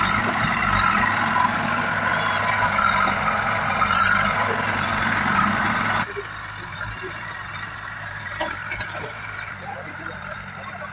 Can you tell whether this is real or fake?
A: real